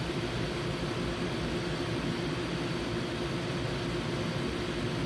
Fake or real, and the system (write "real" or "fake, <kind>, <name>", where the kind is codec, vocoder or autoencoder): real